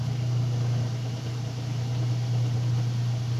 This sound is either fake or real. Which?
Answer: real